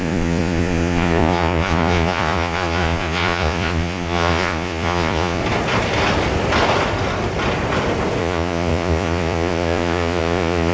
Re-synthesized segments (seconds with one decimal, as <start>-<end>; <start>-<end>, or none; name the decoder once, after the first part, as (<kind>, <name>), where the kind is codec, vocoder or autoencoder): 0.0-5.4 (vocoder, Vocos); 8.2-10.7